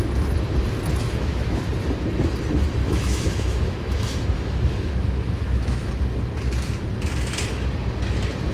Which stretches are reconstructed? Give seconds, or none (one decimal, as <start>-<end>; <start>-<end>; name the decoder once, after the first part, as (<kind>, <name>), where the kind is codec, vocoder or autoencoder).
1.0-1.6 (autoencoder, DAC-VAE); 2.8-5.9